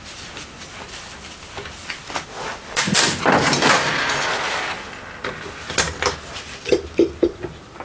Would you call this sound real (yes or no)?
yes